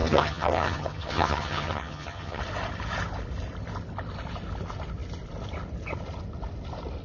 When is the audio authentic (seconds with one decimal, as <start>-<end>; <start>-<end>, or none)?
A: 2.4-7.0